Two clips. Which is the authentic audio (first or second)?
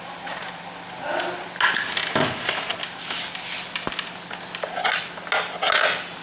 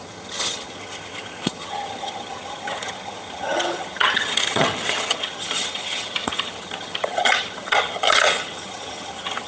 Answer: first